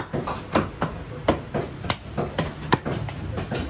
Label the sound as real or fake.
real